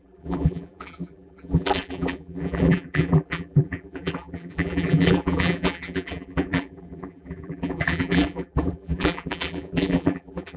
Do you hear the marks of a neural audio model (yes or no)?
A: yes